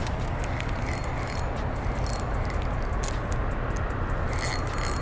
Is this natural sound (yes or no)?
yes